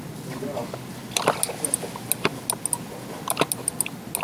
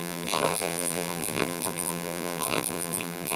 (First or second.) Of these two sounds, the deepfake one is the second